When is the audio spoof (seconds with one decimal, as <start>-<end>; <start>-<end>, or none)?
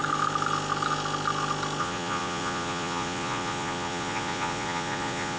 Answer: 1.8-5.4